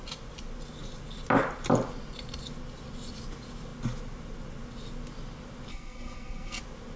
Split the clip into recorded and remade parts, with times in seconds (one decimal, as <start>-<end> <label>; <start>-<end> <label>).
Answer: 0.0-5.7 recorded; 5.7-6.6 remade; 6.6-7.0 recorded